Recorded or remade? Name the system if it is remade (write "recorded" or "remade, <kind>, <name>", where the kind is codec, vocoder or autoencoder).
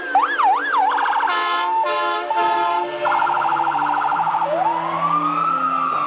recorded